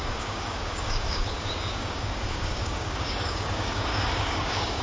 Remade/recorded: remade